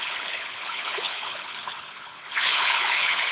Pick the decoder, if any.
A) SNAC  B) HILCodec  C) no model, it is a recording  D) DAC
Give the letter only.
B